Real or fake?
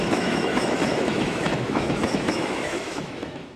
fake